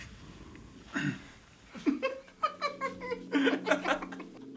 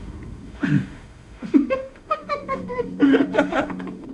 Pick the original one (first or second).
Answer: first